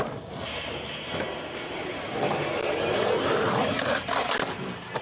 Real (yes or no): yes